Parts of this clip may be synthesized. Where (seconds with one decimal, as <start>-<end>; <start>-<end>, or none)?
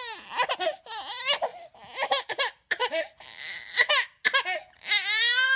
2.8-3.9